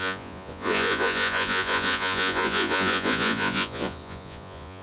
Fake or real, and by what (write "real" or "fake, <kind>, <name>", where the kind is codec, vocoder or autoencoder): fake, vocoder, Vocos